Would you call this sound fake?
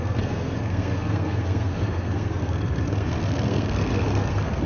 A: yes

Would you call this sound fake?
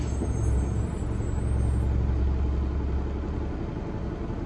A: no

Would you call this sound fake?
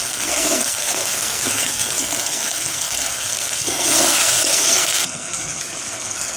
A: yes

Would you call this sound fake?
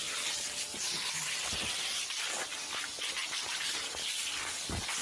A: no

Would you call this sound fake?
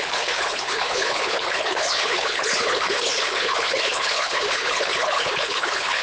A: yes